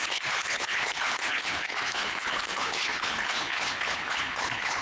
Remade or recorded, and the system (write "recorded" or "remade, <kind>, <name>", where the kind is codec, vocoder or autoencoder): remade, codec, HILCodec